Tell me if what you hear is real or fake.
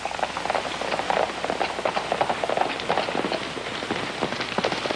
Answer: real